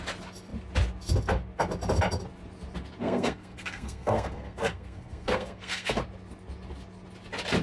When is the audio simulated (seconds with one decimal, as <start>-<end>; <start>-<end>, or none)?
3.0-6.0